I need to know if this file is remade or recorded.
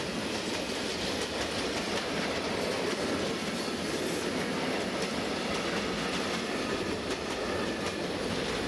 recorded